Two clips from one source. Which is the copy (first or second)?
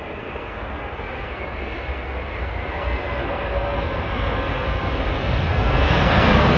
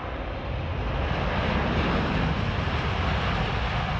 first